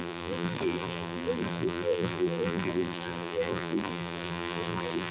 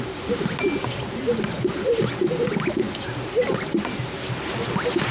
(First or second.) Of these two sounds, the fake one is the first